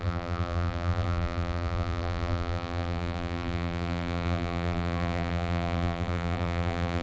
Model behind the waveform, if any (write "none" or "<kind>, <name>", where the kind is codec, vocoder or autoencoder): vocoder, BigVGAN v2